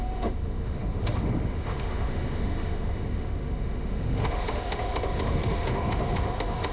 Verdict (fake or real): fake